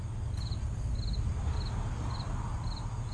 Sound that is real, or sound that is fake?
real